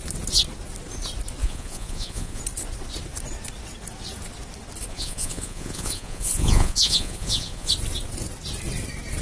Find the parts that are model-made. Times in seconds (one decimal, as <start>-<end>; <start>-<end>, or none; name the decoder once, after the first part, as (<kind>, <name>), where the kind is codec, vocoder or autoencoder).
1.4-2.4 (vocoder, Vocos); 4.9-7.7